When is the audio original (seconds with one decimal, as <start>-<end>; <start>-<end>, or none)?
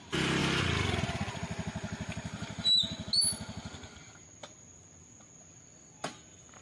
0.0-6.6